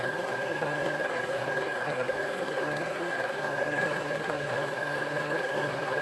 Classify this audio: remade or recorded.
remade